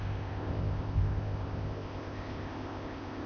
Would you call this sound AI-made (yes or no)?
yes